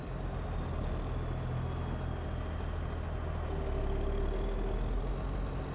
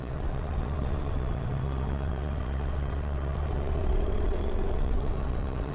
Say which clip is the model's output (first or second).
second